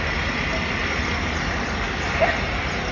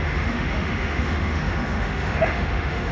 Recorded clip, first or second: first